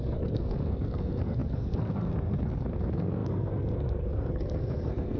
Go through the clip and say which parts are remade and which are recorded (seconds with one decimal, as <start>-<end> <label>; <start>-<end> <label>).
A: 0.0-5.2 remade

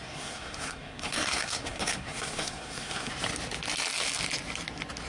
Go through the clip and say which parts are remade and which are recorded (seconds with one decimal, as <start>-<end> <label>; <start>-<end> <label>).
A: 0.0-3.1 remade; 3.1-5.1 recorded